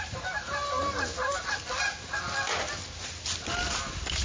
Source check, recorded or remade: recorded